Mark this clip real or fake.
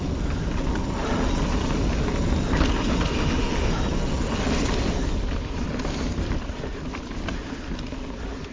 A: real